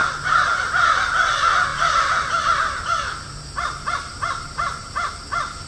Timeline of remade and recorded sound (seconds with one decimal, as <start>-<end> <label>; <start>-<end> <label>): 0.0-1.7 recorded; 1.7-5.1 remade; 5.1-5.7 recorded